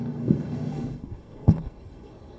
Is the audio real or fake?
fake